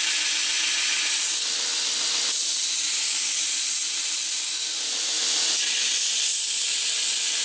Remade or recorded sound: recorded